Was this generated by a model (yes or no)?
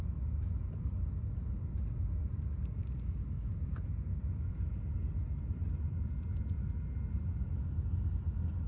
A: no